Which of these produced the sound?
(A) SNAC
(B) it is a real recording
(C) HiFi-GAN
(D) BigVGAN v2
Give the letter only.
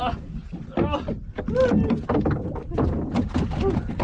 B